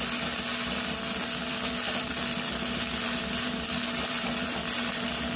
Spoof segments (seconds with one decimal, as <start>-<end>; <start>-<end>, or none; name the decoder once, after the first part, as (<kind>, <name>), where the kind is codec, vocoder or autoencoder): 1.4-4.6 (vocoder, BigVGAN v2)